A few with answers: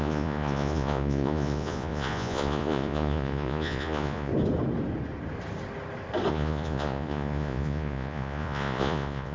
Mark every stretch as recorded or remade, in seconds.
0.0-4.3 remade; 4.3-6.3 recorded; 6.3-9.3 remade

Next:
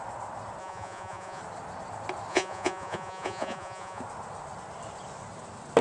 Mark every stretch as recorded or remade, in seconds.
0.0-0.6 recorded; 0.6-1.4 remade; 1.4-2.3 recorded; 2.3-4.0 remade; 4.0-5.8 recorded

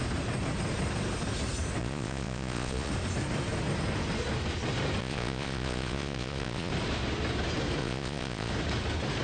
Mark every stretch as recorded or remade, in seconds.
0.0-1.8 recorded; 1.8-2.9 remade; 2.9-5.0 recorded; 5.0-6.7 remade; 6.7-7.8 recorded; 7.8-8.5 remade; 8.5-9.2 recorded

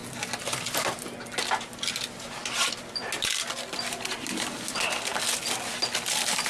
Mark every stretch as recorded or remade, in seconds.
0.0-6.5 recorded

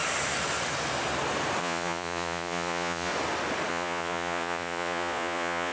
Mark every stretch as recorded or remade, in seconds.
0.0-1.6 recorded; 1.6-3.1 remade; 3.1-3.7 recorded; 3.7-5.7 remade